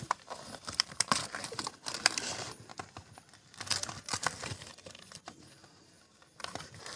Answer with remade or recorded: remade